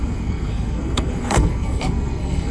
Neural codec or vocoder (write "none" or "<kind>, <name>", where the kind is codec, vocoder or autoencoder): codec, SNAC